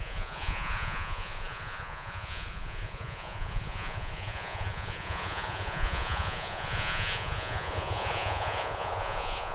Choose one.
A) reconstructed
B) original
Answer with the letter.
A